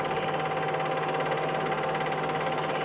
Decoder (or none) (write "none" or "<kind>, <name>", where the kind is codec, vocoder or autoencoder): none